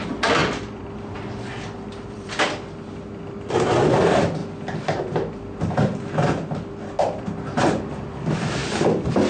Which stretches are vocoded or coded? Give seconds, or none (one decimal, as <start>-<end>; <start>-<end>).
0.0-4.4; 7.7-9.3